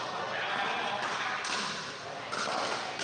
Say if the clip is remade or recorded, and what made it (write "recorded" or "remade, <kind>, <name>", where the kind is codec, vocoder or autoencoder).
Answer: recorded